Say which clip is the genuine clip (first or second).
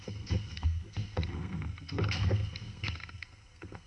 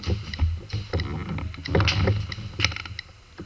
second